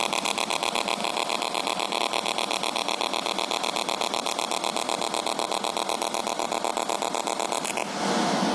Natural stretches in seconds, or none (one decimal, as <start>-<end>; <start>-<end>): 0.0-1.0; 2.0-8.5